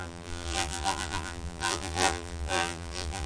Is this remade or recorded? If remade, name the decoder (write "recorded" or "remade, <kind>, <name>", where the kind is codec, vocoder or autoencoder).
remade, vocoder, BigVGAN v2